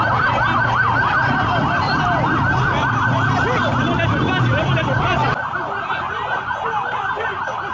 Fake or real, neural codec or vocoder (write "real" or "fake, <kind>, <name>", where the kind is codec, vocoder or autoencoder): real